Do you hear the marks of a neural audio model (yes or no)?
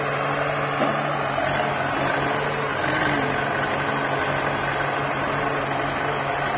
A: no